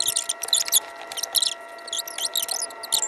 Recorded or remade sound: recorded